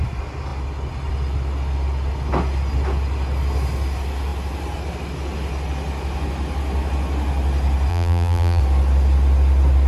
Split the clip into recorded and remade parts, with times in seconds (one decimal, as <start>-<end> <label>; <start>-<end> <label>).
0.0-7.9 recorded; 7.9-8.6 remade; 8.6-9.9 recorded